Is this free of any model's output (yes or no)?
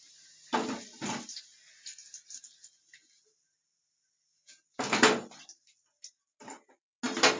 yes